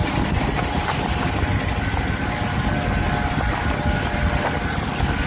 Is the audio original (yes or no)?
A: yes